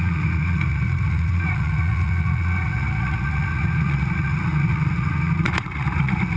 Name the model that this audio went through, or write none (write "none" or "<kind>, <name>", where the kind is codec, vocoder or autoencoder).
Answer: vocoder, Vocos